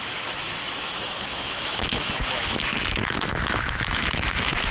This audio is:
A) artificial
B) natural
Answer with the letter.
A